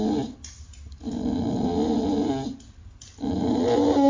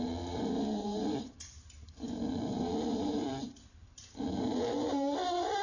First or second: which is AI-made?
second